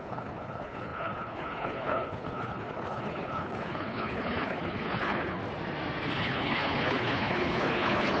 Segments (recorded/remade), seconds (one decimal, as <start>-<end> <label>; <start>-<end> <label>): 0.0-5.4 remade; 5.4-6.1 recorded; 6.1-8.2 remade